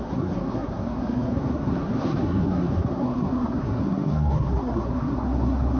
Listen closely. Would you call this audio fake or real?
fake